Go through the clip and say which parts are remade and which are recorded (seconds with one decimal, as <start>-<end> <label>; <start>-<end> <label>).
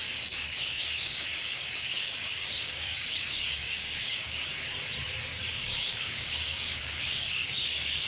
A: 0.0-4.5 remade; 4.5-5.3 recorded; 5.3-8.1 remade